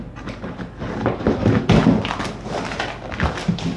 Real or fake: real